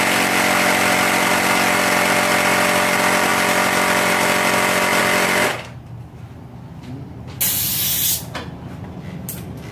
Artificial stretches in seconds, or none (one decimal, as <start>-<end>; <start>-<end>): none